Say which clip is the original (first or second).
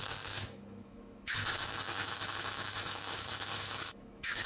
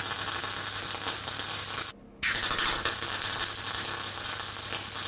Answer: second